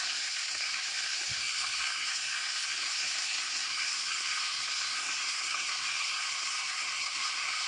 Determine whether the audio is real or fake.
fake